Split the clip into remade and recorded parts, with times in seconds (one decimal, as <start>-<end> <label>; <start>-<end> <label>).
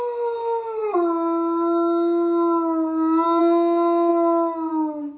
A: 0.0-5.2 recorded